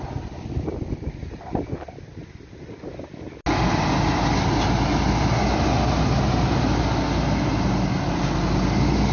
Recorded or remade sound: recorded